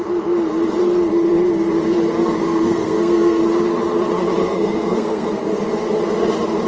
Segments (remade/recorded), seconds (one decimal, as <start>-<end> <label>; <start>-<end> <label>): 0.0-2.4 recorded; 2.4-3.4 remade; 3.4-4.4 recorded; 4.4-5.6 remade; 5.6-6.7 recorded